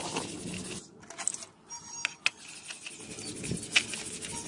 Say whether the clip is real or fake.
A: real